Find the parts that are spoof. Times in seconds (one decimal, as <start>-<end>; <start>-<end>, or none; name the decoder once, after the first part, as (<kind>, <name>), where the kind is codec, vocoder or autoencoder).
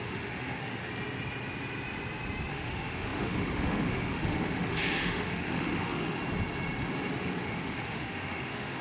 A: 0.0-0.8 (autoencoder, DAC-VAE); 2.5-6.2; 7.1-8.8